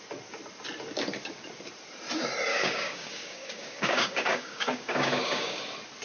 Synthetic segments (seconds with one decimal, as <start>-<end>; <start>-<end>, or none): 2.5-5.6